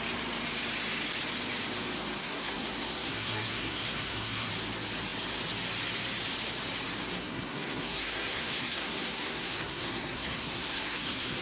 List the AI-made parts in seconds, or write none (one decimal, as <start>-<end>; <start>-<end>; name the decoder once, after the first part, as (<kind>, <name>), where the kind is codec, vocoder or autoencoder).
2.2-4.5 (codec, SNAC); 7.1-11.4